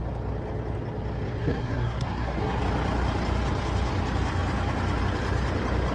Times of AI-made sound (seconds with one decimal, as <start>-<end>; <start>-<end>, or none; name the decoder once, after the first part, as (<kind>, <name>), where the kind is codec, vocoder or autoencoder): 1.4-2.6 (codec, SNAC)